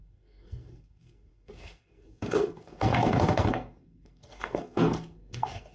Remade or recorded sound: remade